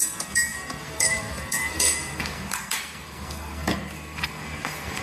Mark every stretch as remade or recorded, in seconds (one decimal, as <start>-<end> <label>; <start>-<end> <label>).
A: 0.0-5.0 remade